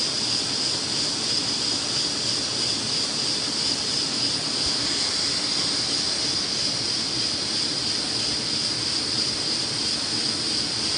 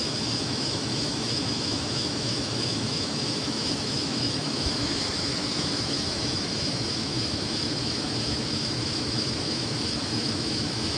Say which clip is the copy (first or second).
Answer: second